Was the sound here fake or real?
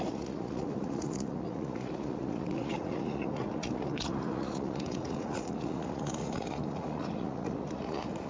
fake